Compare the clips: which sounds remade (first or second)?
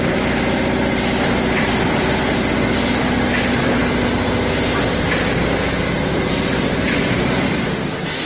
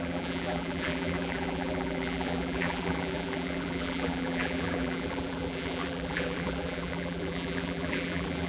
second